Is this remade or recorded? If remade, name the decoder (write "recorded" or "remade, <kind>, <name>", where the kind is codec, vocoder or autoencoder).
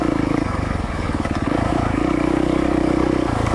remade, codec, DAC